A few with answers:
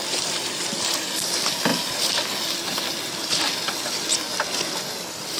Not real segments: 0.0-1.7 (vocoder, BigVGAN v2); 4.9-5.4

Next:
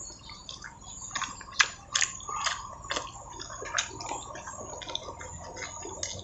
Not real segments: 0.0-2.7 (vocoder, BigVGAN v2)

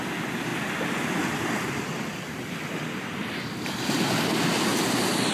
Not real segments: none